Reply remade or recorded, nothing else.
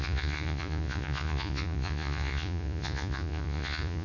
remade